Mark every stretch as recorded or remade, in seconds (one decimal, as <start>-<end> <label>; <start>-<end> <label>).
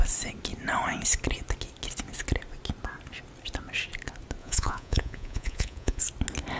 0.0-4.4 recorded; 4.4-6.0 remade; 6.0-6.6 recorded